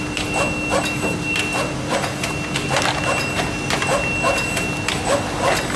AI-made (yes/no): no